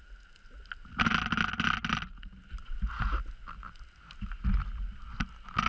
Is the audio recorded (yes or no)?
yes